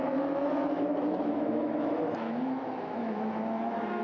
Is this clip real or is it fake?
fake